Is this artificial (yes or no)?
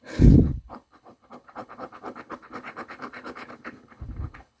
yes